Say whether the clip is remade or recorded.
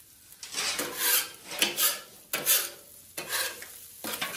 recorded